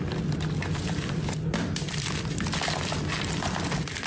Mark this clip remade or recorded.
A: remade